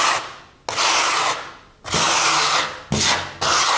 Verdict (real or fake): real